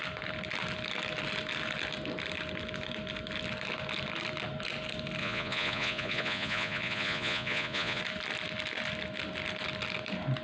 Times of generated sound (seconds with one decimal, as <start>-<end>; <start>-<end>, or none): 5.2-8.0